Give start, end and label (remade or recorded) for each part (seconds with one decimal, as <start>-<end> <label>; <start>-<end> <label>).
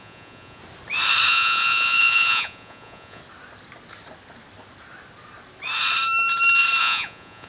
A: 0.0-0.6 remade; 0.6-1.3 recorded; 1.3-3.2 remade; 3.2-6.8 recorded; 6.8-7.5 remade